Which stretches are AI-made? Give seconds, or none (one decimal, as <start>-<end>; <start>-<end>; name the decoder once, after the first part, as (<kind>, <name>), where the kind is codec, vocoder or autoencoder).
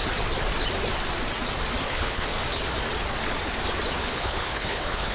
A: 1.8-2.3 (codec, HILCodec); 4.0-5.1